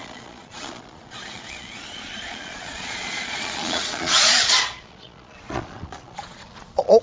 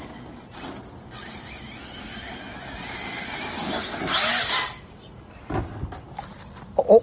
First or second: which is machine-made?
first